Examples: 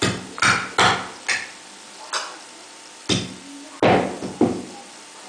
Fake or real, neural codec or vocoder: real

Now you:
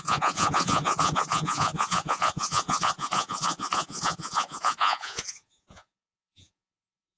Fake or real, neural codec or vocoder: fake, vocoder, Vocos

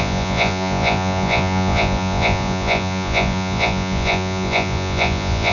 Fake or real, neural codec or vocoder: fake, vocoder, Vocos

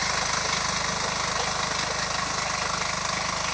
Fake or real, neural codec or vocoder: real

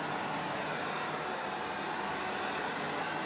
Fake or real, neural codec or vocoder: real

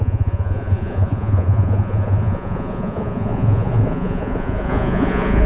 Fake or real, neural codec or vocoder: fake, vocoder, Vocos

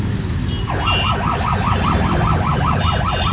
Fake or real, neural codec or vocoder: real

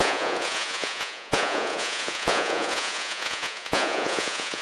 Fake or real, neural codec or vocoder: fake, vocoder, Vocos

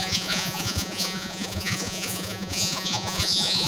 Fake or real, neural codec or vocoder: fake, vocoder, Vocos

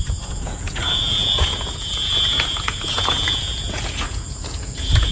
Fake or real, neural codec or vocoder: fake, vocoder, Vocos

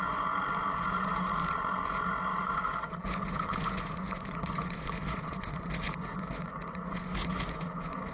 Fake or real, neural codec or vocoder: fake, vocoder, Vocos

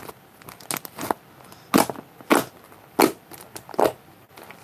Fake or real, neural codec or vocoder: real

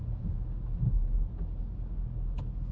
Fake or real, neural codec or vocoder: real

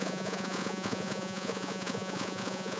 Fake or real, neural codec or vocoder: fake, vocoder, Vocos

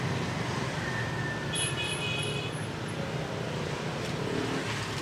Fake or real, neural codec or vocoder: real